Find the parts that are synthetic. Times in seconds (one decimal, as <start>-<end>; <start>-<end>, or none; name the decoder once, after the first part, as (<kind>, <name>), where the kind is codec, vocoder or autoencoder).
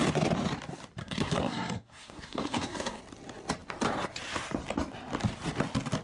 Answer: 1.0-3.0 (codec, SNAC)